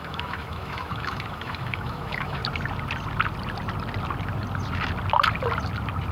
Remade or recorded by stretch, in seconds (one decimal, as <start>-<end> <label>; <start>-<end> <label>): 0.0-2.4 remade; 2.4-6.1 recorded